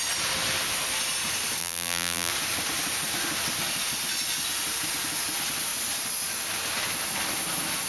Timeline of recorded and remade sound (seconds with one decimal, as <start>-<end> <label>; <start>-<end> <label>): 0.0-1.6 recorded; 1.6-2.3 remade; 2.3-7.9 recorded